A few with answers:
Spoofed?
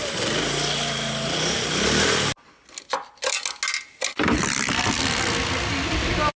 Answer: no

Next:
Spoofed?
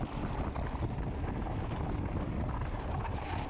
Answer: no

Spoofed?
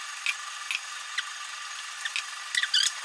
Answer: no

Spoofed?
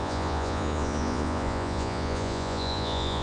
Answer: yes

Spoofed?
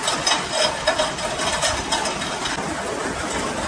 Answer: no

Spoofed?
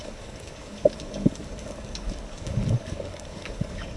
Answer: yes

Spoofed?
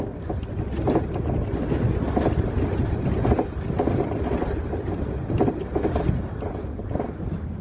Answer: no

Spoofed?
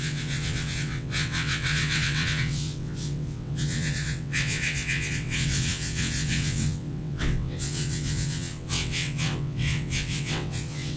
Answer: yes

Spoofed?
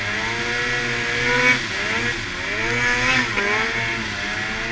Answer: no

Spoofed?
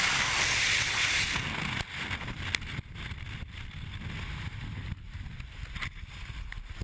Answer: no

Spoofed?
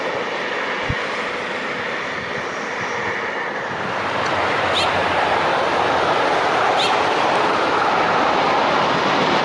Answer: no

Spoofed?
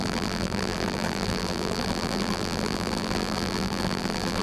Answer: yes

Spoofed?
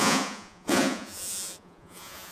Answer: yes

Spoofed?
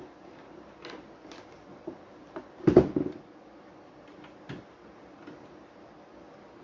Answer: no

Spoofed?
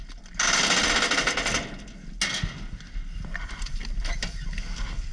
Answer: no